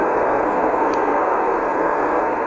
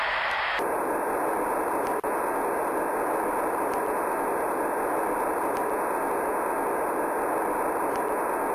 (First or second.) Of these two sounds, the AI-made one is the first